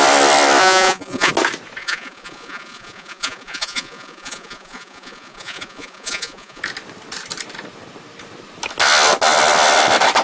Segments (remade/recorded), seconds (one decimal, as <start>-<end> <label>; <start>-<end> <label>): 0.0-0.6 recorded; 0.6-1.3 remade; 1.3-1.8 recorded; 1.8-6.6 remade; 6.6-10.2 recorded